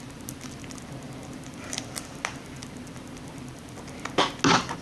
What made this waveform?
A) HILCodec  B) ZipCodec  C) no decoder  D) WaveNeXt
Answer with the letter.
C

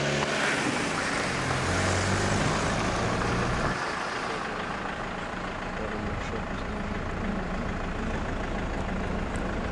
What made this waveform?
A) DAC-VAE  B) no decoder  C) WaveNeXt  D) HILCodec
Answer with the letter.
B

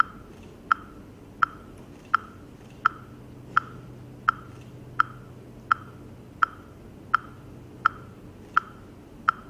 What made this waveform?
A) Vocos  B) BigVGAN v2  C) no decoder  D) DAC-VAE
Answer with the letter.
C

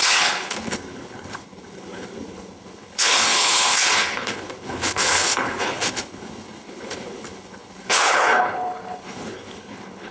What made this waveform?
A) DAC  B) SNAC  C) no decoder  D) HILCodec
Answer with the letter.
D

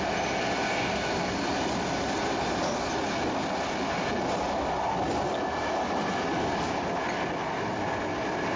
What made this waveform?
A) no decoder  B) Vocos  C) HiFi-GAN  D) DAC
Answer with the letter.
A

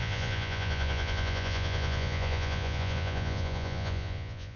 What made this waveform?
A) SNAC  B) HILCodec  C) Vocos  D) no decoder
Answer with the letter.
C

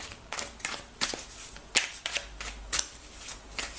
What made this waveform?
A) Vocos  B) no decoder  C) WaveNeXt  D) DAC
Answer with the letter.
B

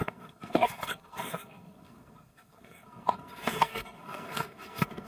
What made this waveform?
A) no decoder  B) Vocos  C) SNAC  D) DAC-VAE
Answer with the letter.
C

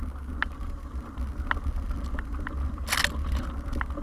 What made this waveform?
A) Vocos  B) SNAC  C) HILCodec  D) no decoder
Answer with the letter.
D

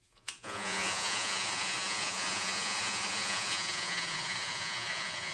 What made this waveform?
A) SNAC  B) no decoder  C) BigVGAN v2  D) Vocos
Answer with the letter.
D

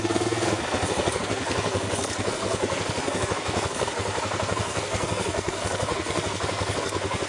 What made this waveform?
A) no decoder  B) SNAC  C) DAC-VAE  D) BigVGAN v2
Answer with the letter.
B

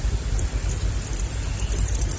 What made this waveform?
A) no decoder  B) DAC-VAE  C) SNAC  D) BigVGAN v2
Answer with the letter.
D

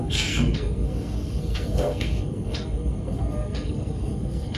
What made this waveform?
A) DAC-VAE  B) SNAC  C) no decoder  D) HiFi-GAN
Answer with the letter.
B